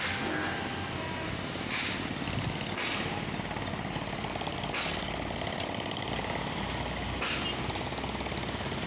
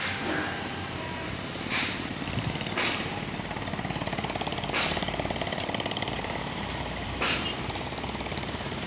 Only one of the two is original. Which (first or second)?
first